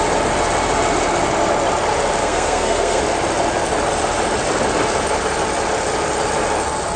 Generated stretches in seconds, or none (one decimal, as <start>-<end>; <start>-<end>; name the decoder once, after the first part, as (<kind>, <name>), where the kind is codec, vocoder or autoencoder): 2.2-3.0 (codec, SNAC)